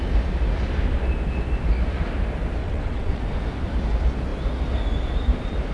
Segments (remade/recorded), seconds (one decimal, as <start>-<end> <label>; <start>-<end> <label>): 0.0-2.6 recorded; 2.6-3.2 remade; 3.2-5.7 recorded